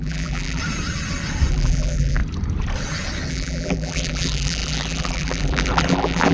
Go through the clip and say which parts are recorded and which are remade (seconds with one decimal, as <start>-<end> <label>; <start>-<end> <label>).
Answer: 0.0-0.6 remade; 0.6-1.5 recorded; 1.5-2.2 remade; 2.2-3.3 recorded; 3.3-6.3 remade